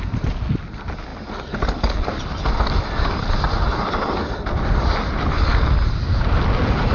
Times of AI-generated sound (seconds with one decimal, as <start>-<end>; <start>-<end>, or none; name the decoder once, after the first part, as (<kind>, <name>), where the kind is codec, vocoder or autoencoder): none